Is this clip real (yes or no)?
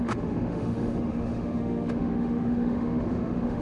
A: no